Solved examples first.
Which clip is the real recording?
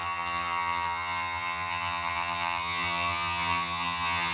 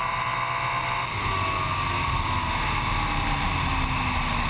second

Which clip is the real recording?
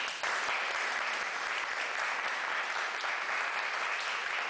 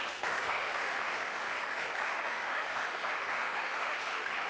first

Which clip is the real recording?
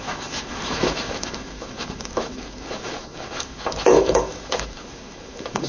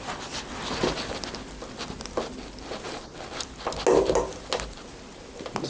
second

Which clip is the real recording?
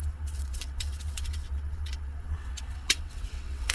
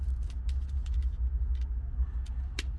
second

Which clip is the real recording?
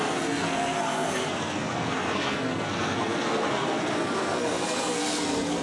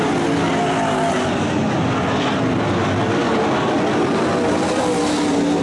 second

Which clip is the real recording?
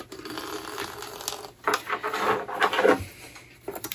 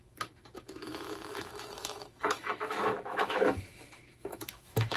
first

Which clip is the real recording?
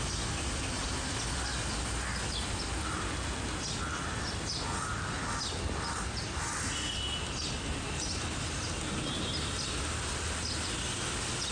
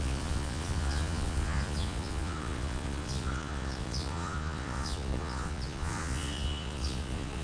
first